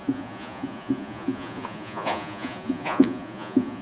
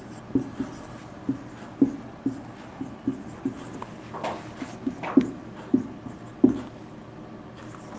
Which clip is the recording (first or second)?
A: second